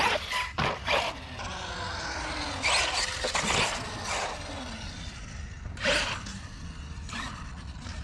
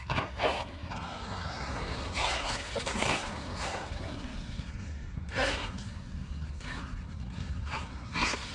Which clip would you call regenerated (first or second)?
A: second